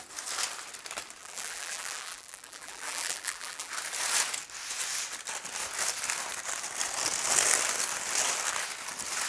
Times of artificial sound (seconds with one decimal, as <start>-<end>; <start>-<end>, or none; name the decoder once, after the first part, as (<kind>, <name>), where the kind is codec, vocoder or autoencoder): 1.2-3.7 (vocoder, BigVGAN v2)